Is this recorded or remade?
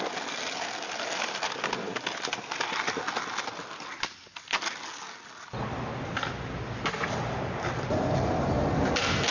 recorded